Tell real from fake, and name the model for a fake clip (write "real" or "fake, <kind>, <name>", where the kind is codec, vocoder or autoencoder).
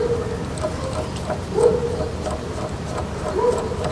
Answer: real